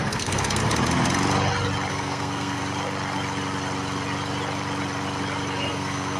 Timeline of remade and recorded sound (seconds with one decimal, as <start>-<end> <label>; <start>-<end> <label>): 0.0-0.6 remade; 0.6-1.9 recorded; 1.9-2.6 remade; 2.6-5.7 recorded; 5.7-6.2 remade